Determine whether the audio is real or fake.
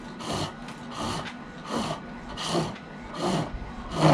real